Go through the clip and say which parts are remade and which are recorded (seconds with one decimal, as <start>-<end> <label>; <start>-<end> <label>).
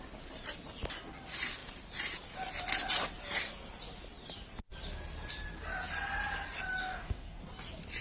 0.0-6.8 recorded; 6.8-7.4 remade; 7.4-8.0 recorded